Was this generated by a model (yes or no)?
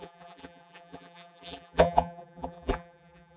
yes